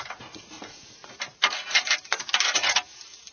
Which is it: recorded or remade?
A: remade